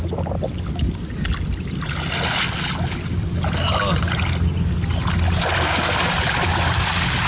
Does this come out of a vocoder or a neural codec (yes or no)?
no